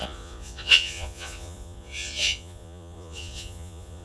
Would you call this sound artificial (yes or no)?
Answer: yes